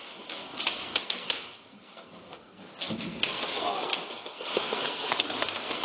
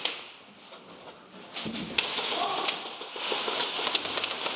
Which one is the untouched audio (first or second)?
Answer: second